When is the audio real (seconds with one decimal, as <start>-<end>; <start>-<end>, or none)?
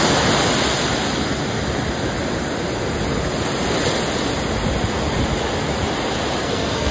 0.0-6.4